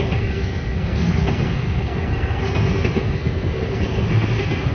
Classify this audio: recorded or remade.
remade